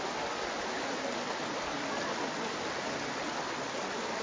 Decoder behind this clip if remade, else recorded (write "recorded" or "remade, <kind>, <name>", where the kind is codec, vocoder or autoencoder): recorded